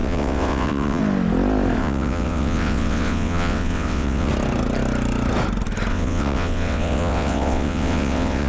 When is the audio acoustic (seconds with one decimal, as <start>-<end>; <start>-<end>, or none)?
1.0-1.8; 4.3-5.9

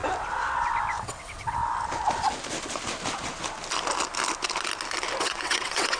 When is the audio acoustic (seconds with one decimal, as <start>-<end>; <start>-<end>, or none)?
0.0-1.0; 1.6-5.2

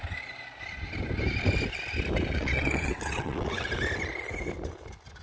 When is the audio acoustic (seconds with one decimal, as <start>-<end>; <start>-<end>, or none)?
0.0-2.3; 3.7-5.2

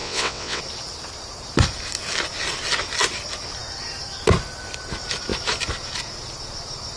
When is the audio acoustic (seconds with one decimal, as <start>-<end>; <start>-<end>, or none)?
0.6-7.0

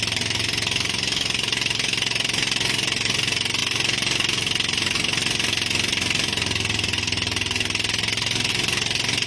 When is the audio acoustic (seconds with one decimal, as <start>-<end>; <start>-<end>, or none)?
0.0-9.3

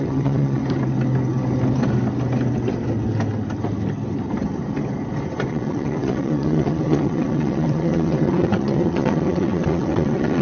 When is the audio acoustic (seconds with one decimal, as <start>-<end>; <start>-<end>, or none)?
0.6-5.5